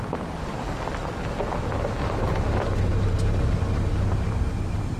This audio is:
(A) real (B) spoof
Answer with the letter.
A